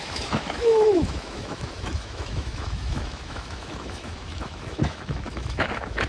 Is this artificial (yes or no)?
yes